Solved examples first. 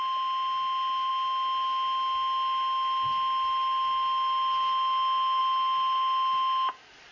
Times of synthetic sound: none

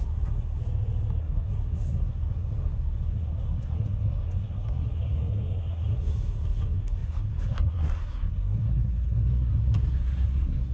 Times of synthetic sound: 0.0-0.6 (codec, SNAC); 1.2-10.7